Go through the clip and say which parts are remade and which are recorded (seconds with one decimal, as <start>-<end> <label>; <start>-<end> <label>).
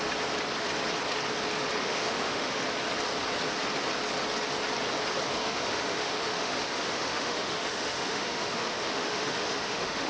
0.0-1.8 recorded; 1.8-2.6 remade; 2.6-5.4 recorded; 5.4-10.1 remade